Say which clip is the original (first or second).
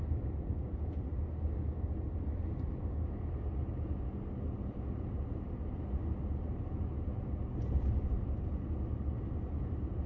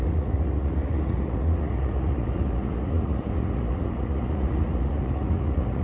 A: first